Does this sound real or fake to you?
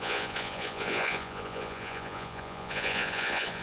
fake